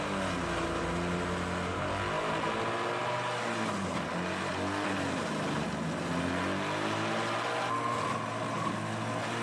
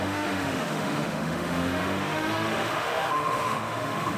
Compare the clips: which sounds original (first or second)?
first